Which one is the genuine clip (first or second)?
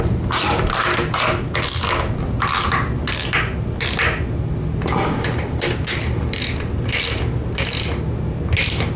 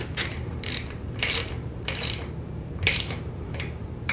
first